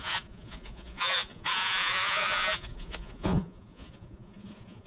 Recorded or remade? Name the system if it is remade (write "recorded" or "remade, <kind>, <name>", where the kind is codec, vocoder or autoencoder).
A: remade, vocoder, Vocos